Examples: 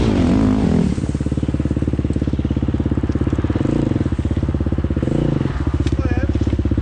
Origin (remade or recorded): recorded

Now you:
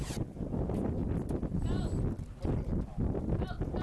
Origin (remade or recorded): recorded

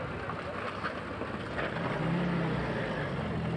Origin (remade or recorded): recorded